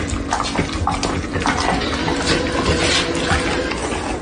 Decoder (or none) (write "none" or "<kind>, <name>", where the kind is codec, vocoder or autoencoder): none